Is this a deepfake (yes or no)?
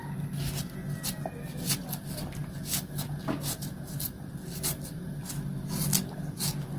no